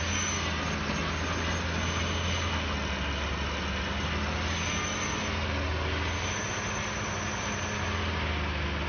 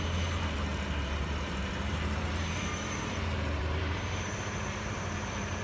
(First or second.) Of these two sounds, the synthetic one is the second